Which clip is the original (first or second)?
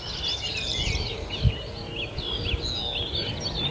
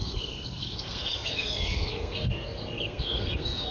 first